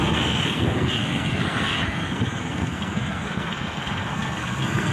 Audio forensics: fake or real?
fake